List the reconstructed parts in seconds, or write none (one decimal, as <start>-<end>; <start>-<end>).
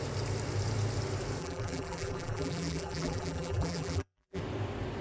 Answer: 1.4-4.4